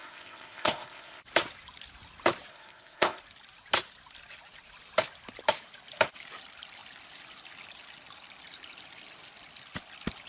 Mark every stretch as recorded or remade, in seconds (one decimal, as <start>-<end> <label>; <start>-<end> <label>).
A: 0.0-1.2 remade; 1.2-2.5 recorded; 2.5-3.2 remade; 3.2-10.3 recorded

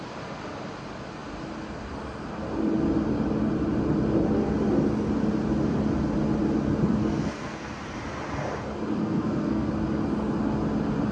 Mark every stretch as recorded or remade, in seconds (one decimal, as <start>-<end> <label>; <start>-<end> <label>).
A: 0.0-7.0 recorded; 7.0-7.7 remade; 7.7-9.0 recorded; 9.0-9.7 remade; 9.7-11.1 recorded

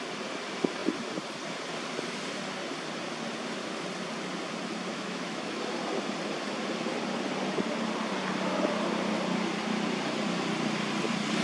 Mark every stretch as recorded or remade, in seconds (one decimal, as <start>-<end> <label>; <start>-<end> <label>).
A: 0.0-4.9 recorded; 4.9-5.6 remade; 5.6-11.4 recorded

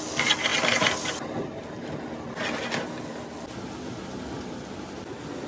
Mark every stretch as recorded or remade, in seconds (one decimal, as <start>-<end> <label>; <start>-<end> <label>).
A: 0.0-5.5 recorded